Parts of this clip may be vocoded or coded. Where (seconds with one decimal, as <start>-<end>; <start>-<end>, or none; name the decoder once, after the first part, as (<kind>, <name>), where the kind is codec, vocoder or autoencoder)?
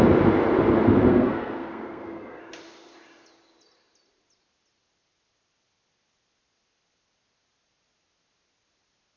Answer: 1.1-2.4 (codec, SNAC)